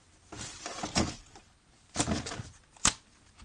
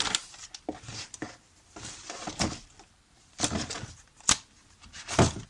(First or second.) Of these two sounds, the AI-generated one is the second